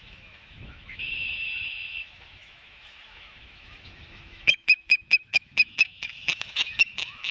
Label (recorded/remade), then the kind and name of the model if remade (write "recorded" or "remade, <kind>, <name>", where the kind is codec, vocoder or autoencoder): remade, autoencoder, DAC-VAE